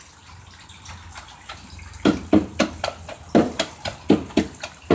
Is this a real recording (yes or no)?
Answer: yes